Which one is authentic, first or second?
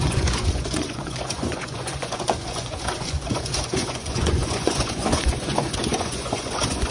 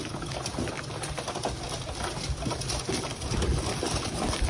second